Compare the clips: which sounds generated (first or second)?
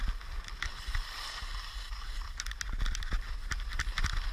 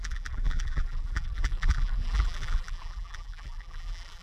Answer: second